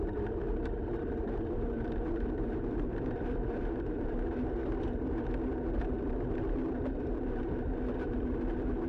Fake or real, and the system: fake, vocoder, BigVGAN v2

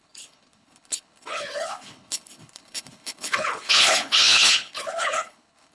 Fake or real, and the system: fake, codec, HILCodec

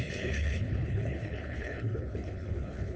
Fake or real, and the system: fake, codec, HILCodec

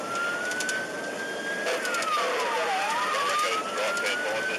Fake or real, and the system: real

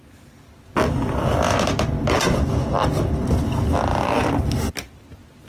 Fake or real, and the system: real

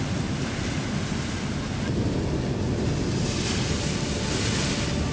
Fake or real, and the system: real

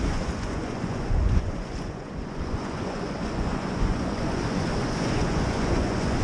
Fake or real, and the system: fake, vocoder, Vocos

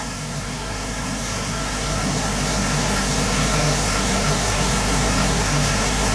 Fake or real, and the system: fake, codec, SNAC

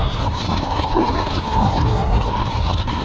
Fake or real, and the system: fake, codec, SNAC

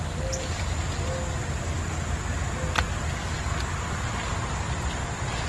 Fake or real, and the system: real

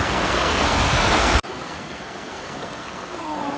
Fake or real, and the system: fake, codec, SNAC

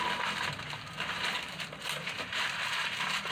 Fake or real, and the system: fake, vocoder, BigVGAN v2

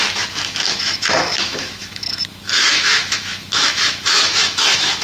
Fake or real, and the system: fake, autoencoder, DAC-VAE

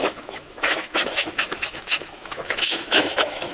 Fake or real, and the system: fake, autoencoder, DAC-VAE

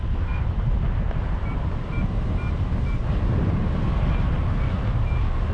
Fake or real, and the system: real